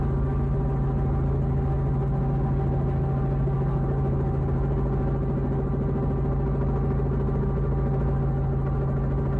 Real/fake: real